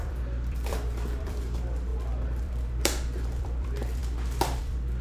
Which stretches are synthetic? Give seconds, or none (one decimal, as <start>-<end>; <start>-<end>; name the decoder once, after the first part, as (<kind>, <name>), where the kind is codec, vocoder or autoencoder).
0.0-4.0 (vocoder, BigVGAN v2); 4.6-5.0